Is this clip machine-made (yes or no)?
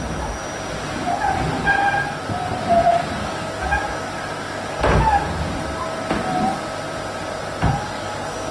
no